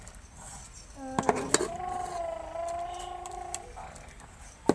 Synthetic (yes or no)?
no